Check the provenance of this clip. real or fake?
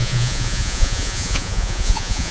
fake